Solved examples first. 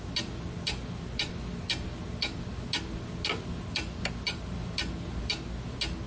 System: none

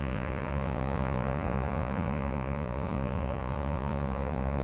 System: vocoder, Vocos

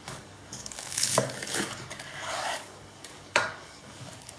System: codec, DAC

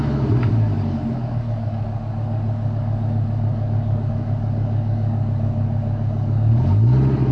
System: codec, DAC